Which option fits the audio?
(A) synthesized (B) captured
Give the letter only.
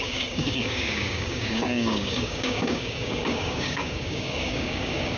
A